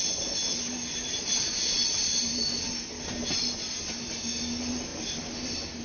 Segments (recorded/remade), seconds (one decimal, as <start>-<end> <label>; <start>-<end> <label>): 0.0-5.8 recorded

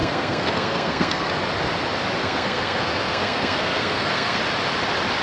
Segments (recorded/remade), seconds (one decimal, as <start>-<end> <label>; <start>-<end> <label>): 0.0-1.3 remade; 1.3-2.2 recorded; 2.2-4.4 remade; 4.4-5.2 recorded

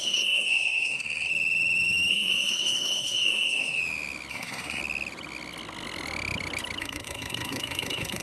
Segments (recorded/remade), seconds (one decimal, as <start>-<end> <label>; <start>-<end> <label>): 0.0-1.3 remade; 1.3-2.1 recorded; 2.1-3.8 remade; 3.8-4.3 recorded; 4.3-4.8 remade; 4.8-6.8 recorded; 6.8-8.2 remade

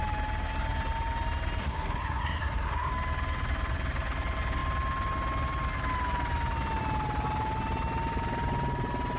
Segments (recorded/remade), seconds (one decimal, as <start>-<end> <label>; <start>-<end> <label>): 0.0-1.6 recorded; 1.6-2.9 remade; 2.9-9.2 recorded

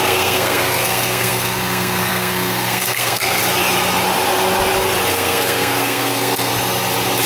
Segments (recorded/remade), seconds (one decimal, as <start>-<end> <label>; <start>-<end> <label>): 0.0-3.4 remade; 3.4-5.1 recorded; 5.1-6.5 remade; 6.5-7.3 recorded